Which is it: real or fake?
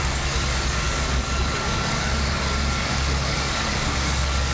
fake